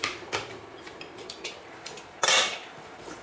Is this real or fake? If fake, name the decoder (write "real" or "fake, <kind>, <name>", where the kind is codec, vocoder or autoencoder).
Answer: real